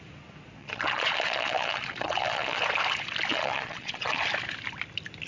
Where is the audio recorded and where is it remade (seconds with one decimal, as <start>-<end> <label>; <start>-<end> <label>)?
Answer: 0.0-0.6 recorded; 0.6-2.6 remade; 2.6-3.3 recorded; 3.3-4.2 remade; 4.2-5.3 recorded